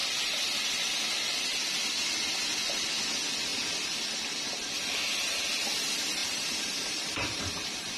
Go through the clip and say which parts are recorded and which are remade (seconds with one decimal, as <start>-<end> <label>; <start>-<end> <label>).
0.0-6.2 recorded; 6.2-7.4 remade; 7.4-8.0 recorded